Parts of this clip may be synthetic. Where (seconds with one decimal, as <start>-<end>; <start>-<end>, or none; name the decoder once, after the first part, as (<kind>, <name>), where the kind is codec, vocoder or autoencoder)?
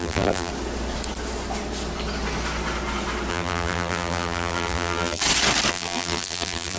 0.0-0.5 (vocoder, BigVGAN v2); 3.3-5.2; 5.7-6.8